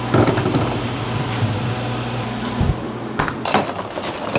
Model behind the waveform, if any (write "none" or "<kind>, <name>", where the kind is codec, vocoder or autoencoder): none